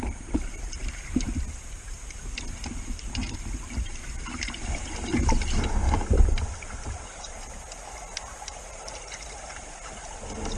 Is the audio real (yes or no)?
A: yes